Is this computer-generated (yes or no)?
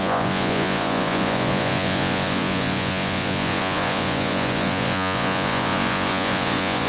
yes